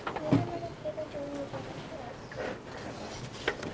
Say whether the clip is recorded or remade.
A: recorded